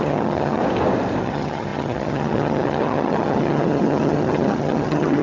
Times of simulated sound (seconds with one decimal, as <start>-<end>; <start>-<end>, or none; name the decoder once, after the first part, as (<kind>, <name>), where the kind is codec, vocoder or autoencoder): 0.0-0.6 (vocoder, HiFi-GAN); 1.2-5.2